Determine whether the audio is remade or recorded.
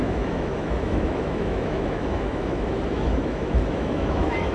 remade